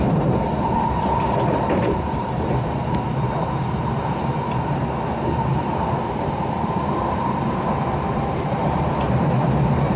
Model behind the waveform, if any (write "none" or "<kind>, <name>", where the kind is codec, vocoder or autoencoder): vocoder, BigVGAN v2